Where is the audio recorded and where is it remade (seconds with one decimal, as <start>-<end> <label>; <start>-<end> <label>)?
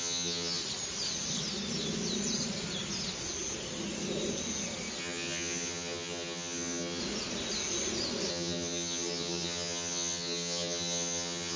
0.0-0.6 remade; 0.6-5.0 recorded; 5.0-7.0 remade; 7.0-8.3 recorded; 8.3-11.6 remade